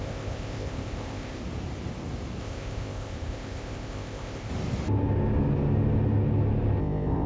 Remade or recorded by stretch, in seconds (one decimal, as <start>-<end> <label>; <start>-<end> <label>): 0.0-1.4 remade; 1.4-2.4 recorded; 2.4-4.5 remade; 4.5-6.8 recorded; 6.8-7.3 remade